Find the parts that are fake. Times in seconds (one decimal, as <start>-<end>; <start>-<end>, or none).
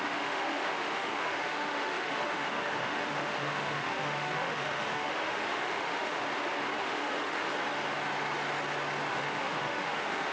0.0-6.2; 6.8-7.5; 9.1-10.3